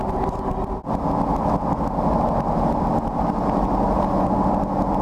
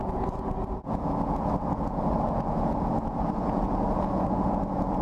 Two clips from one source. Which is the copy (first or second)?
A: second